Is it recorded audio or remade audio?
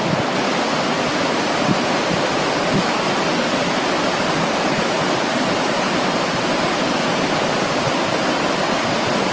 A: recorded